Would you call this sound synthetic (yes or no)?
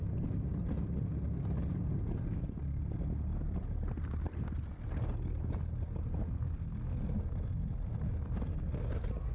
no